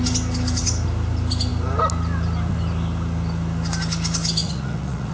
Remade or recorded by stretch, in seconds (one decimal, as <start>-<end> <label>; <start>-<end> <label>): 0.0-4.4 recorded; 4.4-5.1 remade